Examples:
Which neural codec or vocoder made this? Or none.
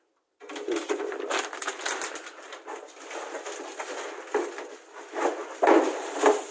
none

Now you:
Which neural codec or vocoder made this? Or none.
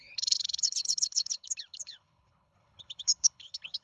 codec, HILCodec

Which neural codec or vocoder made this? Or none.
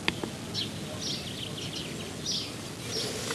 none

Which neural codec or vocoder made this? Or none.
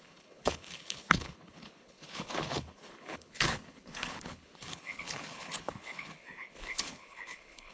codec, HILCodec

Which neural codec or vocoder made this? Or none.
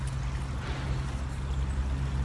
none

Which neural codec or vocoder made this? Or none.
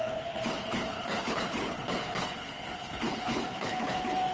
codec, HILCodec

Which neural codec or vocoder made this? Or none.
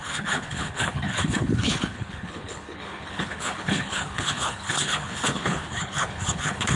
codec, HILCodec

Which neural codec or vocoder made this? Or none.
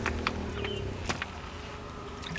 none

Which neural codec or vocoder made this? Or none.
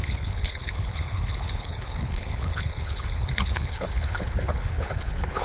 codec, HILCodec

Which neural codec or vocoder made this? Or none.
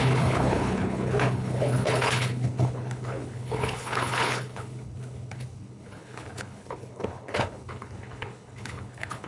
codec, HILCodec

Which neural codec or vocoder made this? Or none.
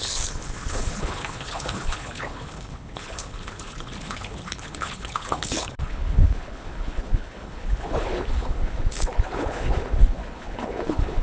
codec, HILCodec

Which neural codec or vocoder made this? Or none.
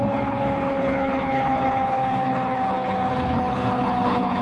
codec, HILCodec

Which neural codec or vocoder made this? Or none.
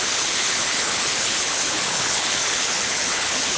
codec, HILCodec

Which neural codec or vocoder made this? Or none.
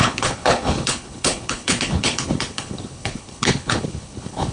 codec, HILCodec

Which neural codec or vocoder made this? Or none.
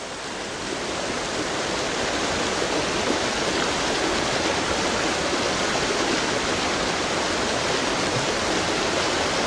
none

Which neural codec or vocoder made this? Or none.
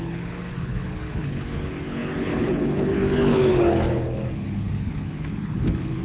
codec, HILCodec